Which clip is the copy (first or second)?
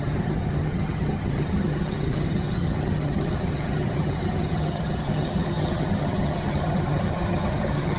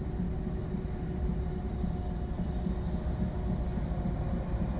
first